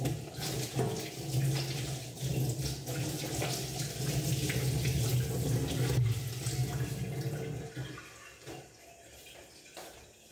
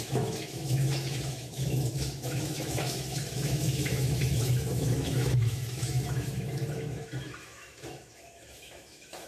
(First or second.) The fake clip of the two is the second